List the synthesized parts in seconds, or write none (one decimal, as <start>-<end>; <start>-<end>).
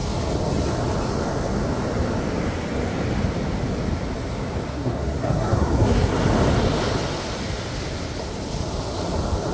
4.7-6.1